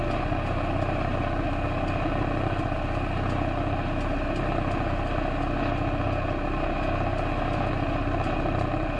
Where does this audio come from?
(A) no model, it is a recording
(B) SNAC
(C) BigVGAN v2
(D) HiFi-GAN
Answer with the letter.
A